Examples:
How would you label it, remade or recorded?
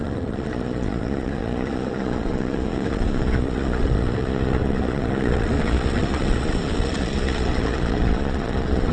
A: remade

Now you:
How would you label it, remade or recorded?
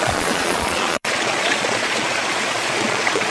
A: remade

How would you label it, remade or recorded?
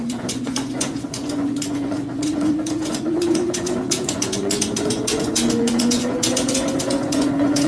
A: remade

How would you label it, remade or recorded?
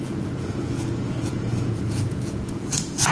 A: remade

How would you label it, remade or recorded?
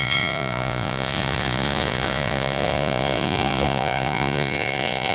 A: remade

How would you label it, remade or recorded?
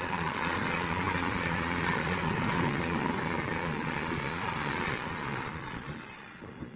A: remade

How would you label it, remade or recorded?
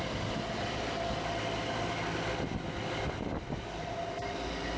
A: recorded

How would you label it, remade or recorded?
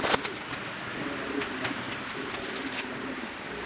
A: recorded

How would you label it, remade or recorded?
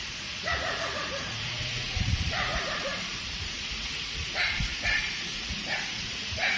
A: remade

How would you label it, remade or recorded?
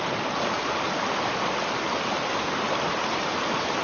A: recorded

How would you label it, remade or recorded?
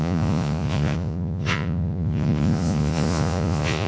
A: remade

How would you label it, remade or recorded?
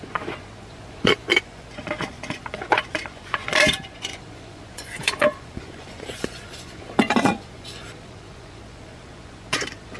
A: remade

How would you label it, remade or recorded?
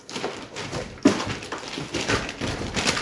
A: recorded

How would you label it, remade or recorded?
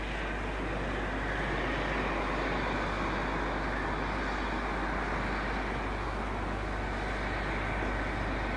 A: recorded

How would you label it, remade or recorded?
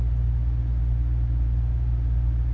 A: recorded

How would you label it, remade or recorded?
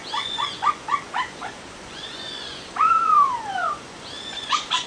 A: remade